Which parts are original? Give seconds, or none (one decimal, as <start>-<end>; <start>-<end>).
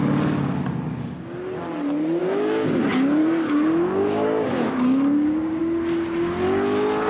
0.0-2.2; 2.8-3.2; 5.6-7.1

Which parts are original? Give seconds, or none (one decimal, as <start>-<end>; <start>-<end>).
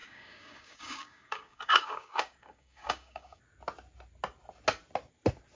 3.4-5.6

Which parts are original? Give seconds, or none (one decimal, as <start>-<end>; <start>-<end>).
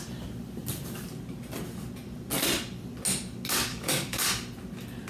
0.0-3.7; 4.3-5.1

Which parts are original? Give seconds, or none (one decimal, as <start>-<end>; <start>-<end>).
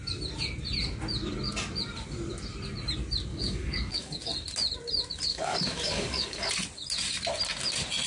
0.0-3.3; 4.3-5.3; 6.5-8.1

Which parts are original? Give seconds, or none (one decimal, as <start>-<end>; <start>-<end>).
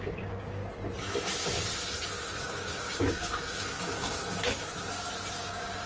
0.6-2.4; 4.7-5.3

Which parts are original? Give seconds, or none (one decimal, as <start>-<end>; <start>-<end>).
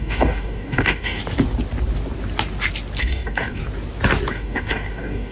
1.2-3.0; 3.6-4.3